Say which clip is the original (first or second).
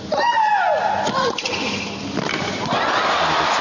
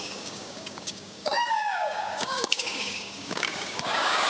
first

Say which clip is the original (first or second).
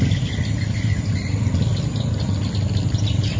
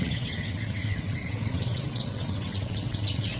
first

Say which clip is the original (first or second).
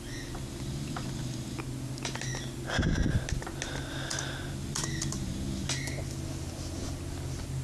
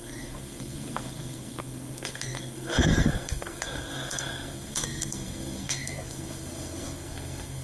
first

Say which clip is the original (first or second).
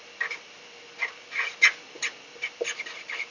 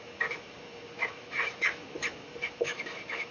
first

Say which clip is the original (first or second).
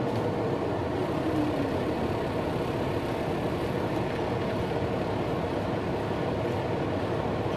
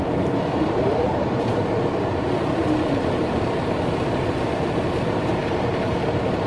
first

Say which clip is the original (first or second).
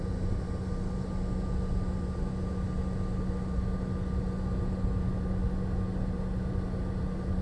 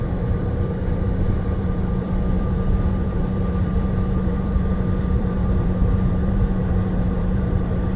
first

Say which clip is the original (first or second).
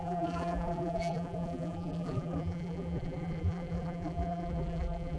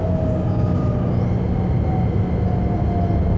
second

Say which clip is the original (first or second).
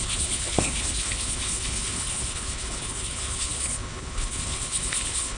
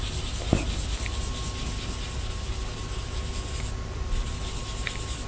second